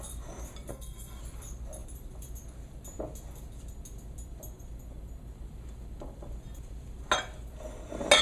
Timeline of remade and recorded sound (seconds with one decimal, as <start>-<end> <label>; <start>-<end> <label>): 0.0-0.7 recorded; 0.7-1.2 remade; 1.2-8.2 recorded